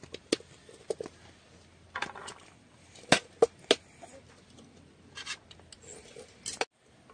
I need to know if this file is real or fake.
real